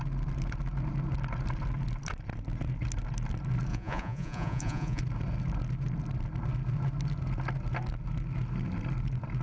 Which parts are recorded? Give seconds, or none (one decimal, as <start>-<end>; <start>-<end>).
0.0-3.7; 5.0-9.4